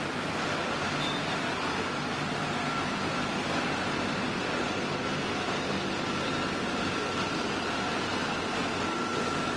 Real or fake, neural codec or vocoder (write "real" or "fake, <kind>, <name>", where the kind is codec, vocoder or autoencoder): real